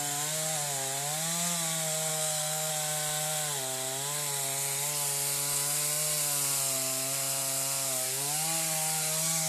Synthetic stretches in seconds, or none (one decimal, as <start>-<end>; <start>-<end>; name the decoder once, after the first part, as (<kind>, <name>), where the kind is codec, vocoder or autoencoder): 2.1-2.7 (codec, SNAC)